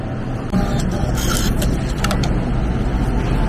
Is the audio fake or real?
real